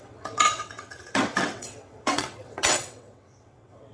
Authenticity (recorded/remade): remade